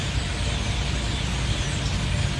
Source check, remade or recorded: recorded